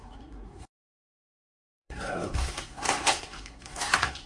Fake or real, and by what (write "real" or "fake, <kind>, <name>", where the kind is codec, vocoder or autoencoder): fake, codec, SNAC